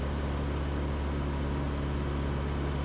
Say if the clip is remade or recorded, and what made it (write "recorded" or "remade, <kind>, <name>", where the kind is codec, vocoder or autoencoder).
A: recorded